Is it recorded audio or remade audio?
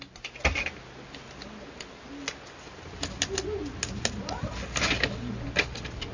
recorded